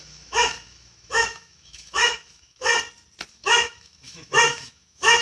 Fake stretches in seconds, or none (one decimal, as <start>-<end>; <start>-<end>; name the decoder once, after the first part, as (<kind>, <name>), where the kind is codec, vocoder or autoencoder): 0.0-2.7 (autoencoder, DAC-VAE); 3.3-5.2